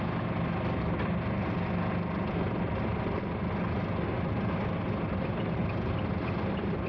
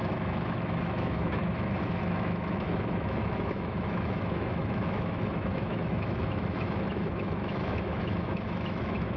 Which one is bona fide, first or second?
first